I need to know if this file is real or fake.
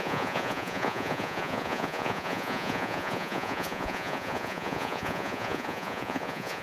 fake